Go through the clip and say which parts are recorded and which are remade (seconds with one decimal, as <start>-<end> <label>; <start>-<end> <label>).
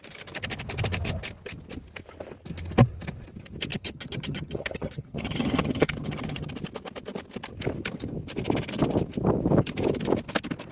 0.0-3.7 recorded; 3.7-6.5 remade; 6.5-10.7 recorded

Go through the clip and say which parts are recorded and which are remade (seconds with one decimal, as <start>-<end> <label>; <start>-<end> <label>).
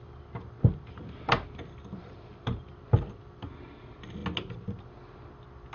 0.0-5.7 recorded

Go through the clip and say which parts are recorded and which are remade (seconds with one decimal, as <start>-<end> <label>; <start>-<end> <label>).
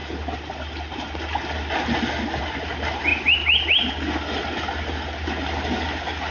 0.0-6.3 recorded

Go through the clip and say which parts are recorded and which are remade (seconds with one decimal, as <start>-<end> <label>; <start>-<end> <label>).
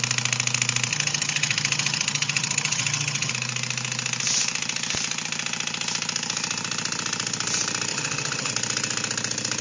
0.0-0.9 recorded; 0.9-3.3 remade; 3.3-7.9 recorded; 7.9-8.5 remade; 8.5-9.6 recorded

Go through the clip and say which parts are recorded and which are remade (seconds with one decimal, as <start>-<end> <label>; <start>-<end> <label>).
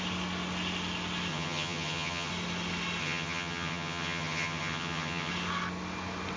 0.0-1.3 recorded; 1.3-2.3 remade; 2.3-3.0 recorded; 3.0-5.3 remade; 5.3-6.4 recorded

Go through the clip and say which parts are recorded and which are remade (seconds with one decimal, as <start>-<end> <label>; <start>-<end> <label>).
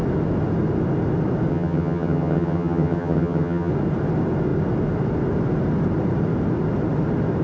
0.0-1.5 recorded; 1.5-3.7 remade; 3.7-7.4 recorded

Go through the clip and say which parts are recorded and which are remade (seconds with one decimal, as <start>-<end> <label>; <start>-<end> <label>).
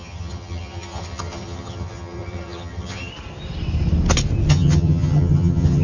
0.0-3.1 remade; 3.1-4.5 recorded; 4.5-5.8 remade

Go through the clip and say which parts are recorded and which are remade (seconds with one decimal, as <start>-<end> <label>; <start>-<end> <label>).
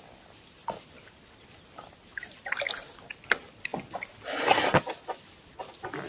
0.0-6.1 recorded